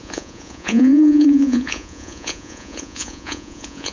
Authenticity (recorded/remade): remade